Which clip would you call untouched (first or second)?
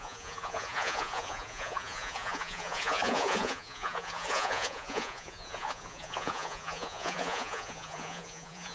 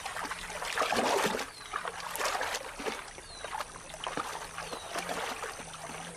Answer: second